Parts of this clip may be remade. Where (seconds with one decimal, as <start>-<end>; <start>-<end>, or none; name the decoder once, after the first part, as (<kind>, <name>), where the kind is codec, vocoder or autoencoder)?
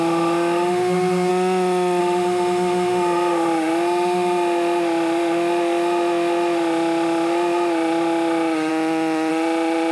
0.0-1.3 (autoencoder, DAC-VAE); 2.0-8.7; 9.3-9.9